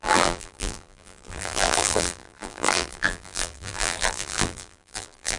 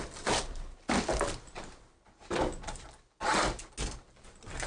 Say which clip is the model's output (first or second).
first